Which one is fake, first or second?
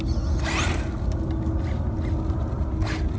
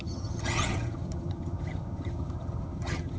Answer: second